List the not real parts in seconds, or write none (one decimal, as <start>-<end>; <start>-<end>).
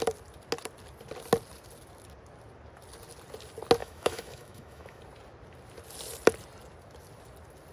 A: 3.8-5.0